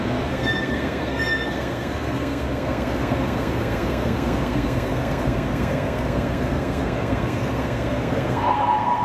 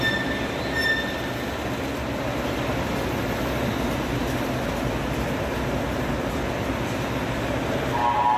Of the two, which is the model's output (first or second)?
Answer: first